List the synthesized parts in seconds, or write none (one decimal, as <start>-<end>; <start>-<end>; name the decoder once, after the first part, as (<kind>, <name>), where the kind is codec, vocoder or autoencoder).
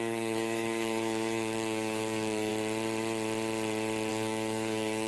0.0-2.5 (codec, DAC); 4.1-5.1